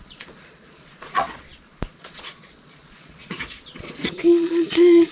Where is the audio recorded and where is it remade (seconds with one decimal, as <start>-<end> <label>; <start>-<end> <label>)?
0.0-5.1 remade